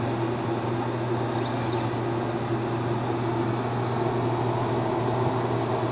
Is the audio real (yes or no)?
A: yes